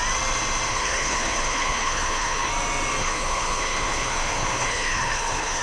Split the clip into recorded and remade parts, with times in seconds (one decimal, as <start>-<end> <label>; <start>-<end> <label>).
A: 0.0-0.7 recorded; 0.7-2.5 remade; 2.5-3.0 recorded; 3.0-5.6 remade